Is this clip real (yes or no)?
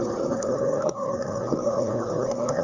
no